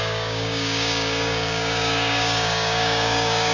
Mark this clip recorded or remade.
remade